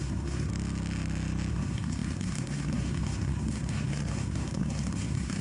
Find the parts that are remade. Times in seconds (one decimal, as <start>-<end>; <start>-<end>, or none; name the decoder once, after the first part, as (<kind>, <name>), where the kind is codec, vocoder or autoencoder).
0.0-0.5 (codec, SNAC); 1.5-5.4